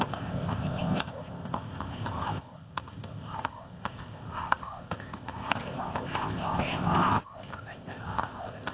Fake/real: fake